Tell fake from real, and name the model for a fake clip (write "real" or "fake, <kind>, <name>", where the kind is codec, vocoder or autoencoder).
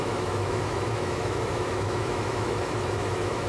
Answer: fake, autoencoder, DAC-VAE